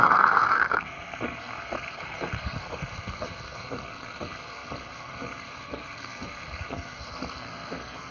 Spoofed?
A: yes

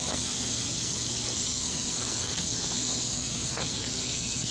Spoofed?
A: yes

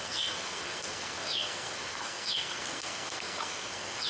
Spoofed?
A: yes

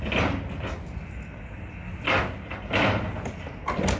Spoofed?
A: no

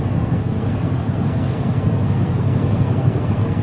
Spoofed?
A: yes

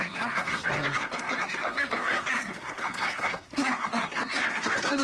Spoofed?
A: yes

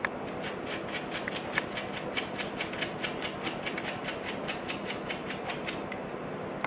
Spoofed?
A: no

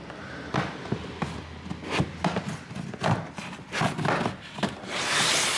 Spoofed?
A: no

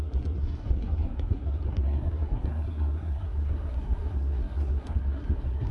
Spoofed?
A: yes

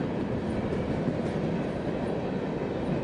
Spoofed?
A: no